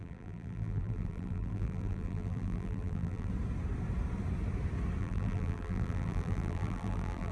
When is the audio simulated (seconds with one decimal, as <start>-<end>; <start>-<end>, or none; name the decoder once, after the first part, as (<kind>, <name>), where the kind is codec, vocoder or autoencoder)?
0.0-3.3 (vocoder, BigVGAN v2); 5.0-7.3